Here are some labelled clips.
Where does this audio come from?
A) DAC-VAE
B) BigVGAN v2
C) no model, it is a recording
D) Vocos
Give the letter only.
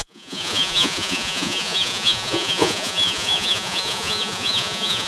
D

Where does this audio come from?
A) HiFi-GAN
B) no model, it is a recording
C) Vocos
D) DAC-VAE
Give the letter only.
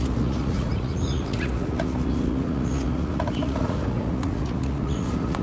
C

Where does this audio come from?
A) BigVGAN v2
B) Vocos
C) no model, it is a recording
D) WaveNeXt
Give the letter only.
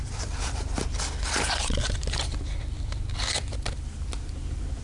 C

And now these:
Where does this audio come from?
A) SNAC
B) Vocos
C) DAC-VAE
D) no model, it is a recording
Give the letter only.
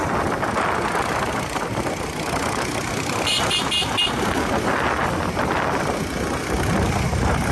D